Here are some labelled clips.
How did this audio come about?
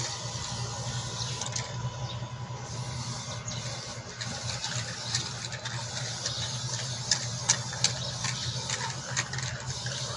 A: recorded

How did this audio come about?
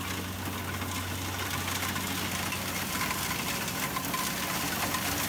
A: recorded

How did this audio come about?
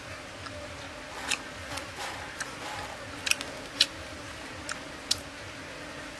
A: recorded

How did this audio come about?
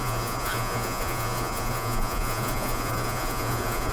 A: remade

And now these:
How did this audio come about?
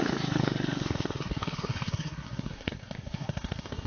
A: remade